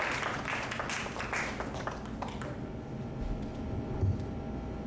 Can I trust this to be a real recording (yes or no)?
yes